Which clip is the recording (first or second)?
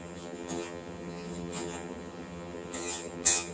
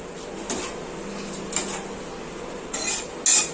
second